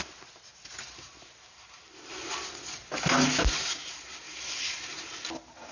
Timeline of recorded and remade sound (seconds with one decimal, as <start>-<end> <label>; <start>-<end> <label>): 0.0-5.7 recorded